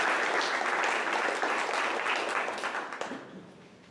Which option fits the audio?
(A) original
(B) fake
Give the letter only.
A